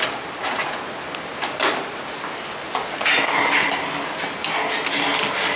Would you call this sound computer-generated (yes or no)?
no